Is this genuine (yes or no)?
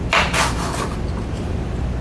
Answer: yes